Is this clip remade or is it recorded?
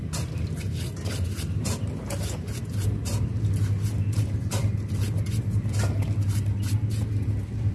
recorded